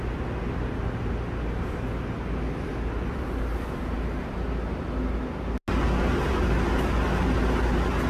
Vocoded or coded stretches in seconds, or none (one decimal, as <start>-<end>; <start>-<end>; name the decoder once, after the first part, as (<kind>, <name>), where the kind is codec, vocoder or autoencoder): none